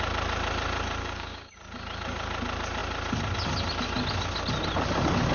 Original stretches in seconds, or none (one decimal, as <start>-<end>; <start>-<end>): 0.0-1.0; 1.5-5.3